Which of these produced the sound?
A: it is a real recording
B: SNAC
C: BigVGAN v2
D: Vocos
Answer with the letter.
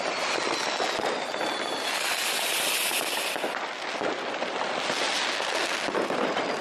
A